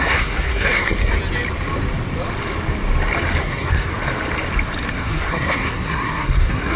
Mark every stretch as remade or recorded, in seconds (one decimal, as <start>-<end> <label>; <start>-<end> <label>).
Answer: 0.0-1.1 remade; 1.1-3.4 recorded; 3.4-3.9 remade; 3.9-4.9 recorded; 4.9-6.8 remade